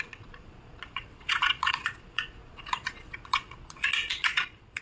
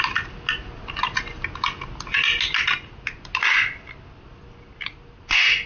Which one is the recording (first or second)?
second